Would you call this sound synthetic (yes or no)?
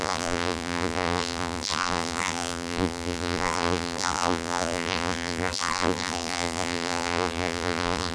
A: yes